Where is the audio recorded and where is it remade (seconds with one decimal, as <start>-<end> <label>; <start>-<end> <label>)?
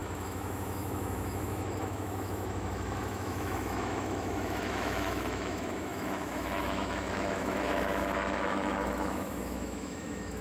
0.0-10.4 remade